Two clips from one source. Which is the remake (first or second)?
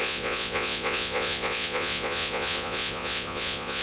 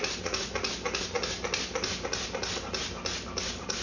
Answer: first